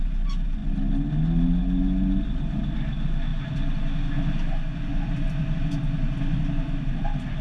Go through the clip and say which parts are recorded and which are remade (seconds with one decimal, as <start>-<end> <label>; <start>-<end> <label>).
0.0-7.4 recorded